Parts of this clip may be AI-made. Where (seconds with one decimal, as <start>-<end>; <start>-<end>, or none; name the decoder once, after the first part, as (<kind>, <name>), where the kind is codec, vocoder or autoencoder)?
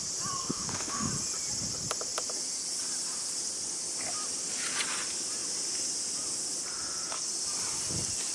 0.4-1.1 (autoencoder, DAC-VAE)